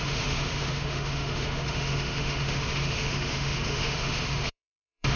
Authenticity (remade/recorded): remade